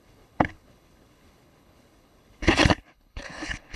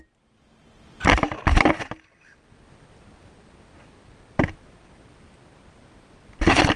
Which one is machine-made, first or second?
first